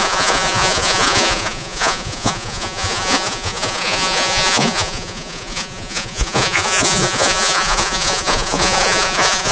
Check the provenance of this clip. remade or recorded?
remade